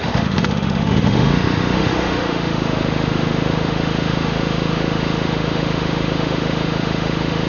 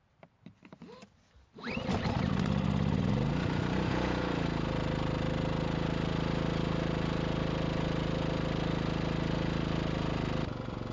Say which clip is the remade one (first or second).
first